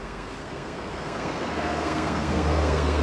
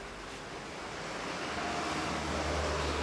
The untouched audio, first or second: second